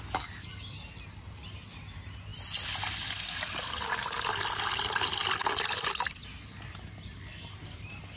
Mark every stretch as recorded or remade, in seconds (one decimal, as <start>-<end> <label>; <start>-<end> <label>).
0.0-8.2 recorded